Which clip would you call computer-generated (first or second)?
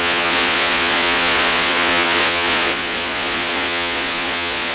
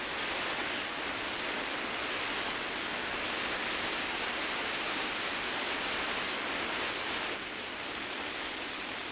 first